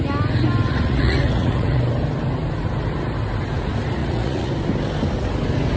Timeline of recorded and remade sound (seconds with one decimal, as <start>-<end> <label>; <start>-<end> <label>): 0.0-0.7 recorded; 0.7-1.8 remade; 1.8-4.0 recorded; 4.0-4.5 remade; 4.5-5.8 recorded